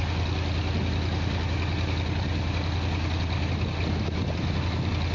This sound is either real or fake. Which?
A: real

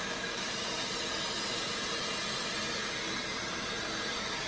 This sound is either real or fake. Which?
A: real